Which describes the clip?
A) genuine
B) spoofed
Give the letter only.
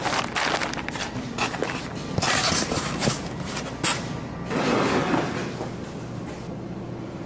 A